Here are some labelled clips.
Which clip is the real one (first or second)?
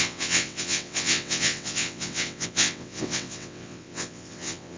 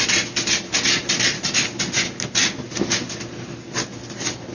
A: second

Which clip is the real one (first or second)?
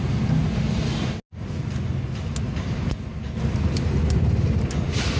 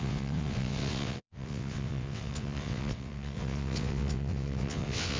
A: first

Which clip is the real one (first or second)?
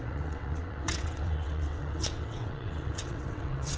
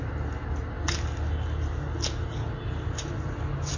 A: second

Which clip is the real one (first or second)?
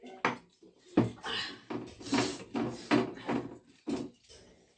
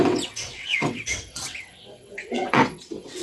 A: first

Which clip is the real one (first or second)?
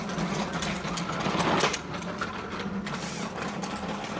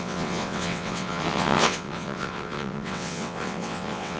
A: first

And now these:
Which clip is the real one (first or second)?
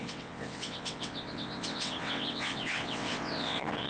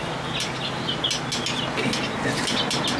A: second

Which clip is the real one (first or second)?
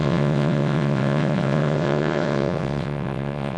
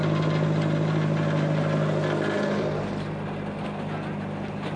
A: second